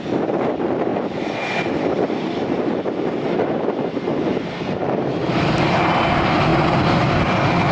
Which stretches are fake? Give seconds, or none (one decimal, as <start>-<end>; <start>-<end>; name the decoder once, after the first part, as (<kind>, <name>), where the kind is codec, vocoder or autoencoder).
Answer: 0.9-5.5 (vocoder, BigVGAN v2)